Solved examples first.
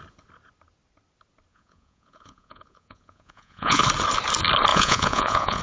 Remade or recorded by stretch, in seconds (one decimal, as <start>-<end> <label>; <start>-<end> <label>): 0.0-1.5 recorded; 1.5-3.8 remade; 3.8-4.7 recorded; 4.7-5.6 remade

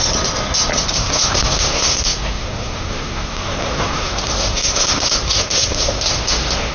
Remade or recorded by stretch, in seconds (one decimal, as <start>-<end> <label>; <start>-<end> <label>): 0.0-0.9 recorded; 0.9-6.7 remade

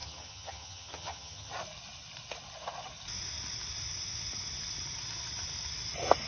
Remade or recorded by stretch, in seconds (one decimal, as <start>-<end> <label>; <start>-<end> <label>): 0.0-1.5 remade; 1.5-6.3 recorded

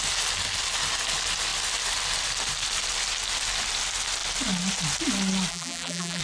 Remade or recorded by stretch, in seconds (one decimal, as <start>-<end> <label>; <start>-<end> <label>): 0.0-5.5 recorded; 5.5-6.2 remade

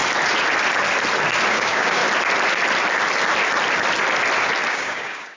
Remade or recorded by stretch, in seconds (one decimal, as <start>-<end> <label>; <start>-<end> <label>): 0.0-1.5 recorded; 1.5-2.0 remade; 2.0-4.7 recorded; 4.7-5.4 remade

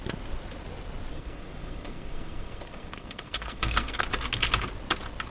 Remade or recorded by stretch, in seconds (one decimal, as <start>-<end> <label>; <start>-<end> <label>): 0.0-1.1 recorded; 1.1-4.0 remade; 4.0-5.3 recorded

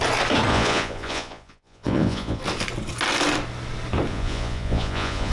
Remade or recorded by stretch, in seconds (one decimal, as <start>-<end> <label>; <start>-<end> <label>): 0.0-0.5 recorded; 0.5-2.4 remade; 2.4-4.1 recorded; 4.1-5.3 remade